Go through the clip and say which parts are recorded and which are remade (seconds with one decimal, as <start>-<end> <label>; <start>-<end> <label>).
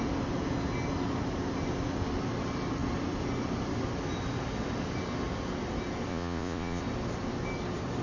0.0-6.1 recorded; 6.1-6.8 remade; 6.8-8.0 recorded